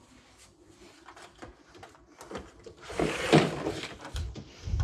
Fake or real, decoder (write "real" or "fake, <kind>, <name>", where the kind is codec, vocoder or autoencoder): real